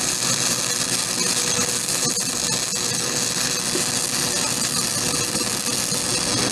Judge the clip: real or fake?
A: real